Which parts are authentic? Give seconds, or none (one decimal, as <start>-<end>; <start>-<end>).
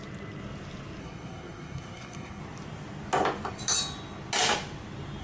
0.0-1.0; 2.4-5.2